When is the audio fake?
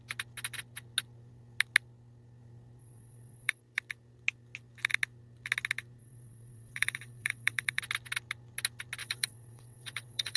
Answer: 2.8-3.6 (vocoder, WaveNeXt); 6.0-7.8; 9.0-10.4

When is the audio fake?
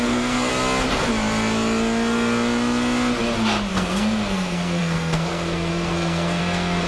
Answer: 0.0-0.5 (codec, SNAC); 3.7-6.9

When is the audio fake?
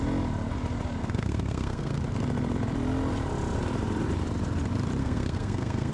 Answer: 1.0-2.0 (codec, SNAC); 5.0-5.9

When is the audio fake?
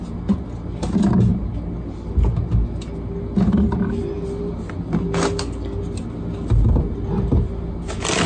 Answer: none